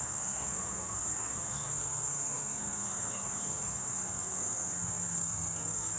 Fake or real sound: fake